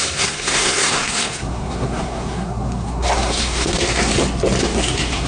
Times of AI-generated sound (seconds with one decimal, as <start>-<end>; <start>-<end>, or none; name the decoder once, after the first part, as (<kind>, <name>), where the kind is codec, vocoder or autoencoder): 0.0-4.1 (codec, SNAC); 4.6-5.3